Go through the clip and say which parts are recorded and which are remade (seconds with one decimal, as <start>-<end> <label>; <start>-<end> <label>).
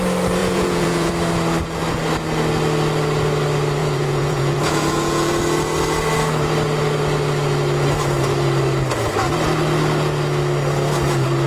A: 0.0-0.4 recorded; 0.4-1.1 remade; 1.1-3.8 recorded; 3.8-5.3 remade; 5.3-11.5 recorded